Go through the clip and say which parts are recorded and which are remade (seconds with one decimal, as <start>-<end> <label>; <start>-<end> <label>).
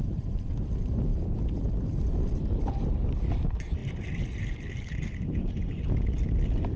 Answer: 0.0-6.8 remade